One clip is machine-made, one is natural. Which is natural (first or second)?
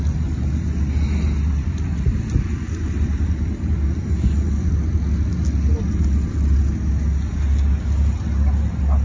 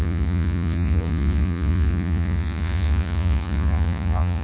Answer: first